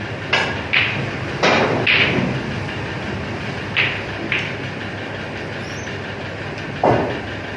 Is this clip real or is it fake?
real